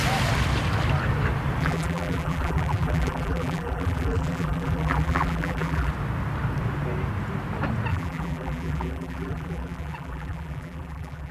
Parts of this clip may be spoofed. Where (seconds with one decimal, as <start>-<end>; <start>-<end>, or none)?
1.6-5.9; 7.9-11.3